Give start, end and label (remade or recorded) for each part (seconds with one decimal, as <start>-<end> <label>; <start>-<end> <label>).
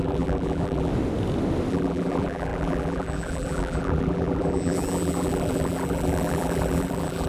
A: 0.0-0.9 remade; 0.9-1.7 recorded; 1.7-7.3 remade